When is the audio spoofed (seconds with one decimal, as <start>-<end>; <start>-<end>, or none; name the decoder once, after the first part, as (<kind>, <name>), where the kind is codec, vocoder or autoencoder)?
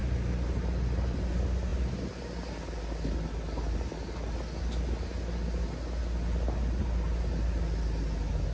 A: none